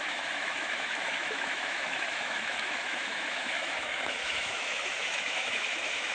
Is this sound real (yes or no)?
no